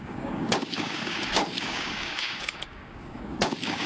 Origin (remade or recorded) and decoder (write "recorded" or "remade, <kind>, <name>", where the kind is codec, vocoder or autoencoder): remade, codec, DAC